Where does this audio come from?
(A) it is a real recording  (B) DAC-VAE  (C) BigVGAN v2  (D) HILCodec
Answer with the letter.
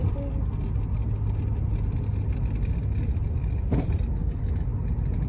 A